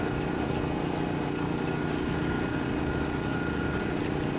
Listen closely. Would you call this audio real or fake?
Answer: real